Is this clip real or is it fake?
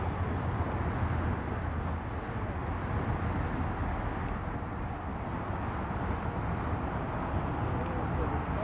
real